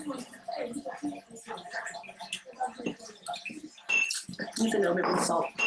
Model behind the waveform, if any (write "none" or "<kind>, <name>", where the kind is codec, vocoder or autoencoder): none